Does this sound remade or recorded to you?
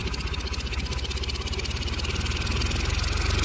recorded